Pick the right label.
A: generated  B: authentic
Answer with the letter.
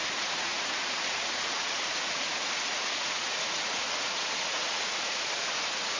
A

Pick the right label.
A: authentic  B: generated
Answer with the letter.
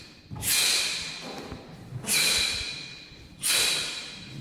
A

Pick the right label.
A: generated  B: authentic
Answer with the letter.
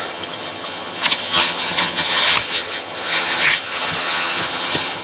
A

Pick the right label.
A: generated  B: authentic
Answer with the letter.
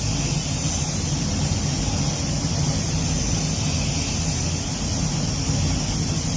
B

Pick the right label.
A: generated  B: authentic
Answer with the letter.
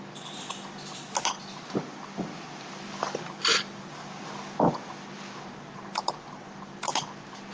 B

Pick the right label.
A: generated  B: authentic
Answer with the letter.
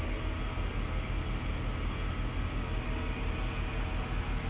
B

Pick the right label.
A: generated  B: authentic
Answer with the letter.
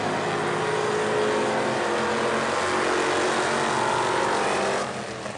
B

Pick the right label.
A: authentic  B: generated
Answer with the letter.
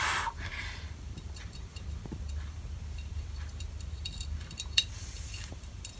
B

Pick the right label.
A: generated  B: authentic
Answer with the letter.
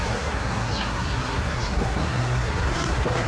A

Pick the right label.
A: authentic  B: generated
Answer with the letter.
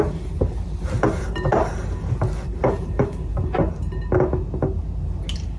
A